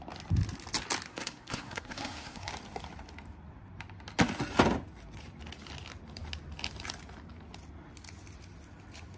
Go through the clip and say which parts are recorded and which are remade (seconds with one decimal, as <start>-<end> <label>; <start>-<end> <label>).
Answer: 0.0-1.1 recorded; 1.1-2.5 remade; 2.5-9.2 recorded